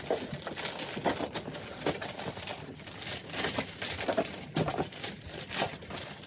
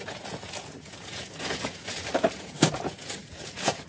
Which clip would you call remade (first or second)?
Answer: second